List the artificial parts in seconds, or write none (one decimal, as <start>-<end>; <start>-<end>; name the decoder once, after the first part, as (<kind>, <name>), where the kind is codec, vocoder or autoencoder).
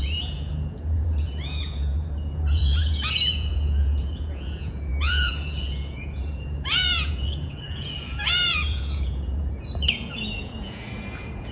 0.0-11.5 (vocoder, Vocos)